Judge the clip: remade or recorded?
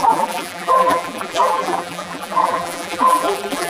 remade